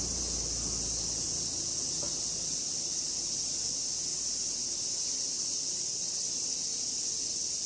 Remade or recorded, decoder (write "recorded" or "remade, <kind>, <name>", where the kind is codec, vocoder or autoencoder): recorded